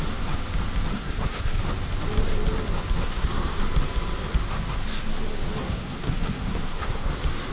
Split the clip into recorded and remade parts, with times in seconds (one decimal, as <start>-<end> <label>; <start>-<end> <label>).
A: 0.0-0.9 recorded; 0.9-1.6 remade; 1.6-3.0 recorded; 3.0-3.6 remade; 3.6-5.6 recorded; 5.6-7.1 remade; 7.1-7.5 recorded